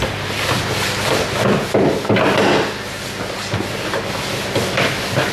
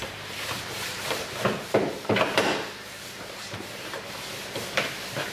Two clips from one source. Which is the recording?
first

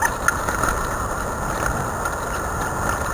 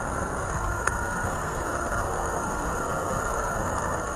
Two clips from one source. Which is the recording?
first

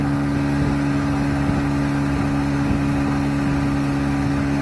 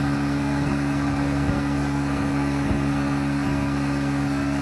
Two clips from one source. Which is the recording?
first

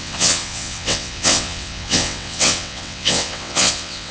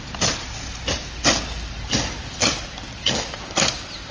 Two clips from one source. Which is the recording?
second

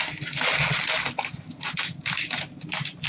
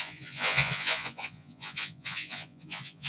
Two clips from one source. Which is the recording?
first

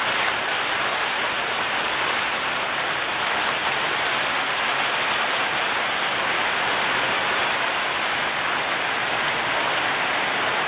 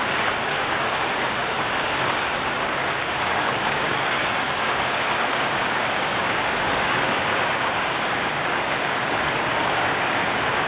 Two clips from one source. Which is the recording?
first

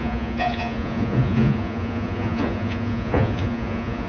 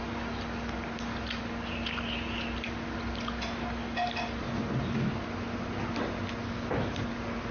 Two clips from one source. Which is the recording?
second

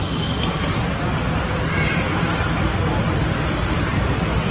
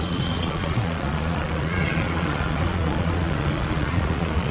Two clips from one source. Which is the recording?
first